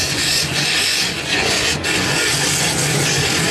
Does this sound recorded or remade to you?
remade